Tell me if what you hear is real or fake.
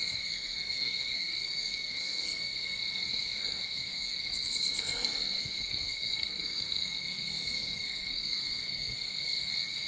fake